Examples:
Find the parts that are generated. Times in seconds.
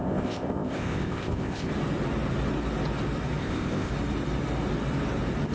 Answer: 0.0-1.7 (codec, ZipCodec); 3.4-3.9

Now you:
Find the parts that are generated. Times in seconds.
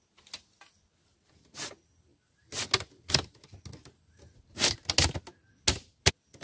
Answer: none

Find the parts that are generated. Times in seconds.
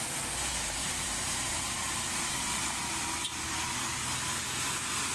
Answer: 0.8-2.3 (vocoder, BigVGAN v2)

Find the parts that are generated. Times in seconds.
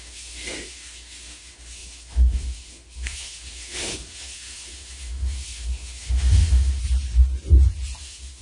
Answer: 0.0-6.8 (autoencoder, DAC-VAE); 8.0-8.4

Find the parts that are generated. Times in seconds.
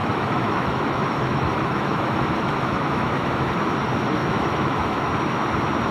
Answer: 0.0-3.5 (autoencoder, DAC-VAE); 4.2-5.1